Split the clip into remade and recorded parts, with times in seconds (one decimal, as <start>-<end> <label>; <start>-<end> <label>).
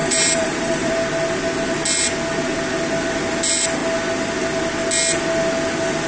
0.0-0.9 remade; 0.9-6.1 recorded